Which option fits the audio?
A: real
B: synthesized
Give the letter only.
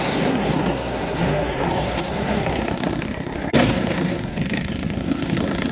B